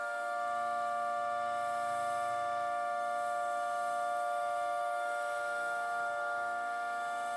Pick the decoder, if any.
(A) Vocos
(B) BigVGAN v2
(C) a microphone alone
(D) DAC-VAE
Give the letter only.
D